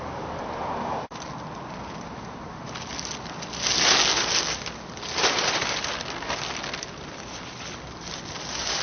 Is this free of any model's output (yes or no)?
yes